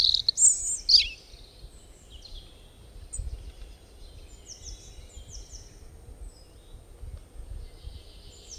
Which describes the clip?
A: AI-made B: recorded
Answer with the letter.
B